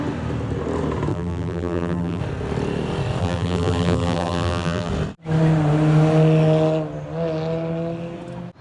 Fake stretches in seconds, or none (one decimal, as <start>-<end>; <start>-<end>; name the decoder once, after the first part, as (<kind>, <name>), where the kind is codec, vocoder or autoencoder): 1.1-2.2 (vocoder, BigVGAN v2); 3.2-4.9